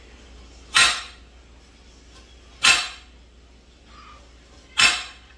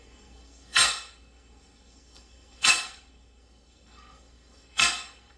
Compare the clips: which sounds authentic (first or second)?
first